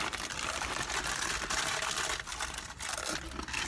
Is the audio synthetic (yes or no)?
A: no